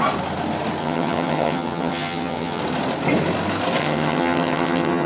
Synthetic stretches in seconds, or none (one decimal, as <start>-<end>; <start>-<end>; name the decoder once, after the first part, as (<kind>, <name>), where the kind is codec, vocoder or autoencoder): 0.8-2.6 (vocoder, HiFi-GAN); 3.8-5.1